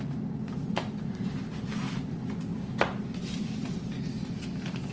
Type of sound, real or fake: real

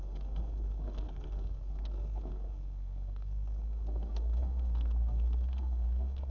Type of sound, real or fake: fake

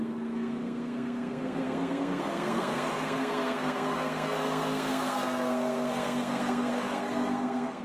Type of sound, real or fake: fake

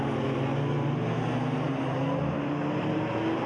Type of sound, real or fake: real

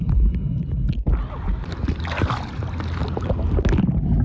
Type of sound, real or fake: real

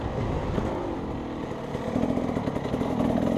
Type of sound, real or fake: real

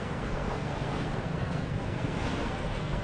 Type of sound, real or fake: fake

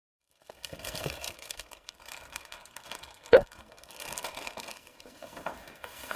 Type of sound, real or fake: fake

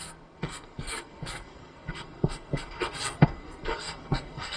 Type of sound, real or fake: fake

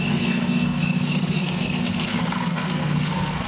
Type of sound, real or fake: fake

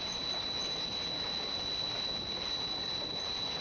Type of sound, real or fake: real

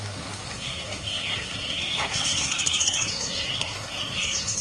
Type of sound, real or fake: fake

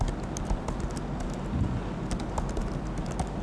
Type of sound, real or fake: real